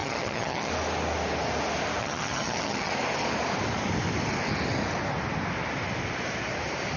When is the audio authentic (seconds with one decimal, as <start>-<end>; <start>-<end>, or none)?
0.7-2.0; 2.9-7.0